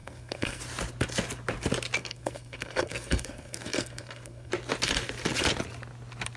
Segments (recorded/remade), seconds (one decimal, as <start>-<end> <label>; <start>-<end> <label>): 0.0-0.6 remade; 0.6-2.0 recorded; 2.0-4.5 remade; 4.5-6.4 recorded